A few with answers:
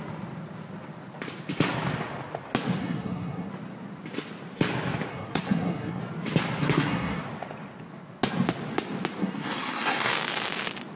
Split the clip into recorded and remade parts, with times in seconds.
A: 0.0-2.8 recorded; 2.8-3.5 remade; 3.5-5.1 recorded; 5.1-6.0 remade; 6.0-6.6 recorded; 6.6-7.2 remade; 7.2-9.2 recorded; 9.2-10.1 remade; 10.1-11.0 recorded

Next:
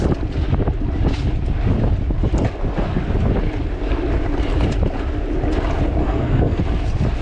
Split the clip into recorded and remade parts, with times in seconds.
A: 0.0-6.0 recorded; 6.0-6.6 remade; 6.6-7.2 recorded

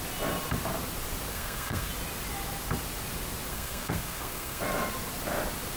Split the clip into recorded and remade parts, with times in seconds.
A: 0.0-1.3 recorded; 1.3-1.9 remade; 1.9-3.5 recorded; 3.5-4.6 remade; 4.6-5.8 recorded